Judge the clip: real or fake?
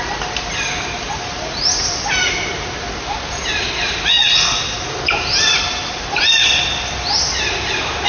real